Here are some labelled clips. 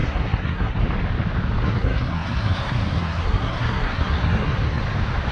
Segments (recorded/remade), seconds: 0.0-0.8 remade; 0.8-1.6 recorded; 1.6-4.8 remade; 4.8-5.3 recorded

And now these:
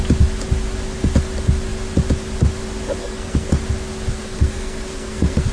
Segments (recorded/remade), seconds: 0.0-3.0 recorded; 3.0-3.6 remade; 3.6-4.1 recorded; 4.1-5.5 remade

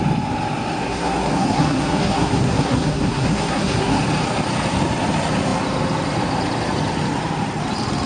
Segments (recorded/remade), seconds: 0.0-0.8 recorded; 0.8-4.0 remade; 4.0-8.1 recorded

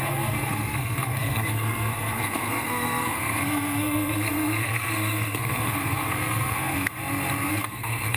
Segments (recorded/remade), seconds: 0.0-7.0 remade; 7.0-7.5 recorded; 7.5-8.2 remade

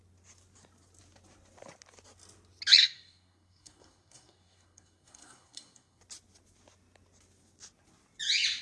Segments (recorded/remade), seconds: 0.0-2.8 recorded; 2.8-6.0 remade; 6.0-8.6 recorded

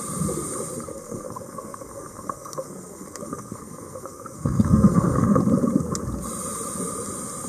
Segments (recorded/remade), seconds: 0.0-0.9 recorded; 0.9-5.4 remade; 5.4-7.5 recorded

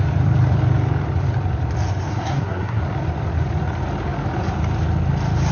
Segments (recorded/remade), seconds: 0.0-2.1 recorded; 2.1-2.8 remade; 2.8-5.5 recorded

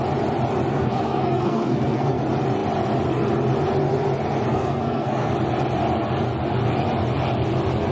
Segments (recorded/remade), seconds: 0.0-0.7 recorded; 0.7-2.2 remade; 2.2-4.5 recorded; 4.5-5.3 remade; 5.3-7.9 recorded